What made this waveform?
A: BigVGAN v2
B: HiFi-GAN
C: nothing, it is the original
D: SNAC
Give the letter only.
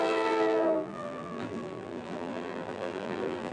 A